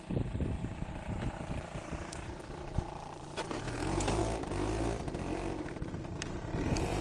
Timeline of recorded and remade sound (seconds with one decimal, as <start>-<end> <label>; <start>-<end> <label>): 0.0-4.2 remade; 4.2-6.0 recorded; 6.0-7.0 remade